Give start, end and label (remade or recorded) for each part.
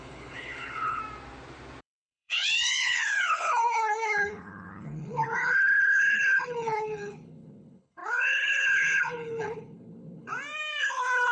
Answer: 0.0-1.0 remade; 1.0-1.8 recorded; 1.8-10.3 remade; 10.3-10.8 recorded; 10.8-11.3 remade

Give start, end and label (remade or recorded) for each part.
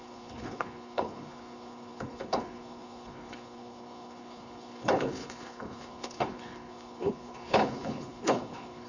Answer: 0.0-8.9 remade